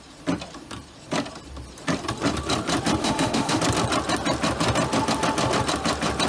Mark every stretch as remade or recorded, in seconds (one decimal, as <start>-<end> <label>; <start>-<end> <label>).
0.0-3.0 recorded; 3.0-3.6 remade; 3.6-6.3 recorded